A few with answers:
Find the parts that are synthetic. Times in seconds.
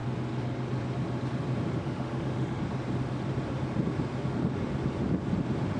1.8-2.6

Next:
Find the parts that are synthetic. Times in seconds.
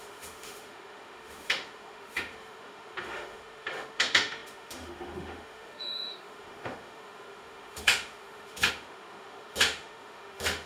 0.0-10.7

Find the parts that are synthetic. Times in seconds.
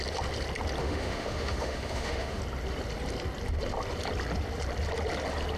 0.8-2.4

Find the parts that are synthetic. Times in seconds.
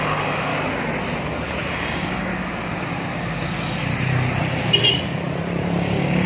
0.0-0.5; 1.7-2.3; 5.8-6.3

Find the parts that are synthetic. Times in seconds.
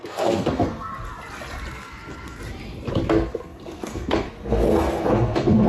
0.0-0.9; 1.7-2.4; 3.1-5.7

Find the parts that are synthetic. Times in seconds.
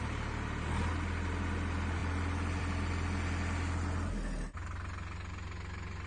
none